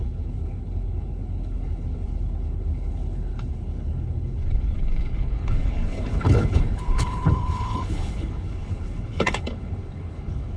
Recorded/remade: remade